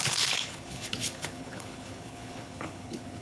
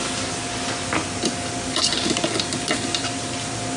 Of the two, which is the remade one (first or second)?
first